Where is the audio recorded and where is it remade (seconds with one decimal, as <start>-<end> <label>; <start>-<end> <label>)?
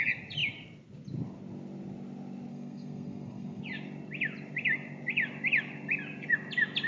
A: 0.0-2.5 recorded; 2.5-3.6 remade; 3.6-6.9 recorded